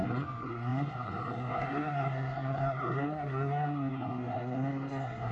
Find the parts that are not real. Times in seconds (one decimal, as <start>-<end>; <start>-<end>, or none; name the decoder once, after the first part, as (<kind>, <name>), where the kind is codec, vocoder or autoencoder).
0.0-5.3 (codec, SNAC)